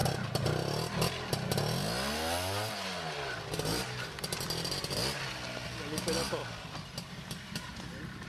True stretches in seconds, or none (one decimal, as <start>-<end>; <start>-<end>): 0.0-8.3